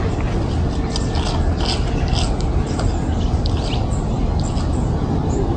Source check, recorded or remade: recorded